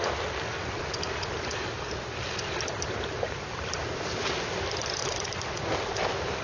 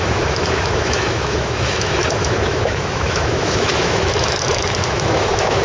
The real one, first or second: first